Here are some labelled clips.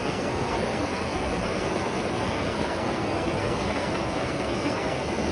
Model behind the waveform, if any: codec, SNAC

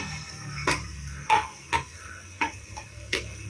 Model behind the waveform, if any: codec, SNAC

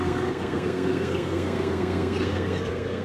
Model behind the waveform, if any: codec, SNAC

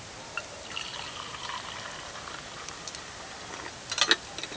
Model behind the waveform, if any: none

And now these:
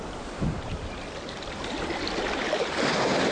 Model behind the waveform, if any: none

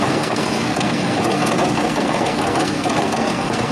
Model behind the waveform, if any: codec, SNAC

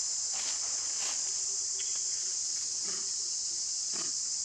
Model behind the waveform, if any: none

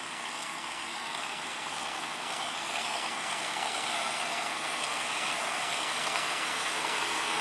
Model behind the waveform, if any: codec, SNAC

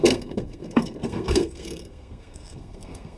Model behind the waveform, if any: codec, SNAC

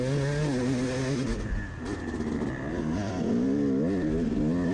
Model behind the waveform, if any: none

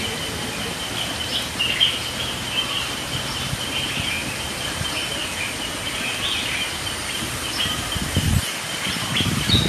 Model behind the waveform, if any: none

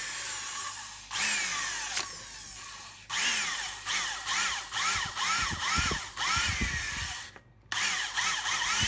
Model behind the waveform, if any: none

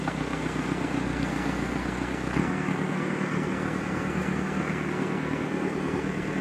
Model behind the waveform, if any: codec, SNAC